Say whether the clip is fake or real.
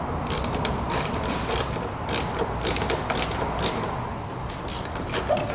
real